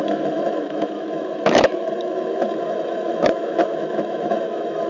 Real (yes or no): no